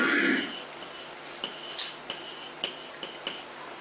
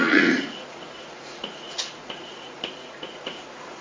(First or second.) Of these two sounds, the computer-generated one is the second